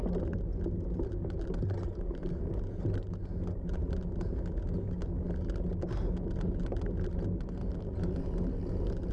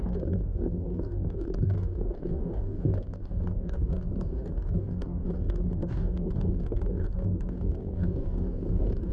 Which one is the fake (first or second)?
second